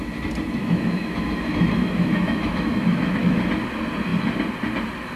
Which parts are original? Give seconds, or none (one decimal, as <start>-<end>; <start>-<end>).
0.0-0.6; 3.4-5.2